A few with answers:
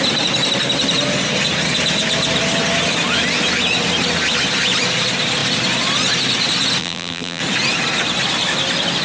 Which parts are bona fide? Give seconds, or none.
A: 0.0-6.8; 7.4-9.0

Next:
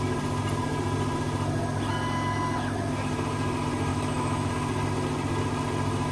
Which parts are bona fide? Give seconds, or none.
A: 0.0-3.9; 4.5-6.1